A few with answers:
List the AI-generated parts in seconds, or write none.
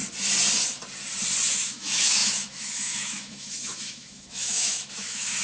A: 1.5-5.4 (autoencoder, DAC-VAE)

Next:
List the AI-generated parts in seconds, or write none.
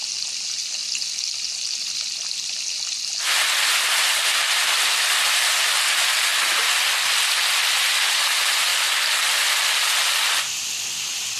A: none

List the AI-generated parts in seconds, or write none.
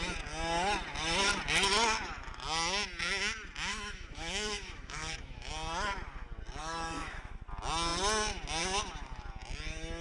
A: 3.7-5.5 (autoencoder, DAC-VAE); 6.6-7.4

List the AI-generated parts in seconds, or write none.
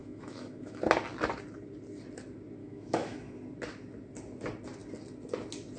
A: 0.0-0.8 (autoencoder, DAC-VAE); 2.6-3.4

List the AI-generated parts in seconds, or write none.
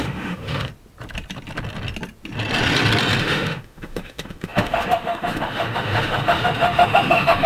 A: 0.0-0.7 (autoencoder, DAC-VAE); 3.2-7.5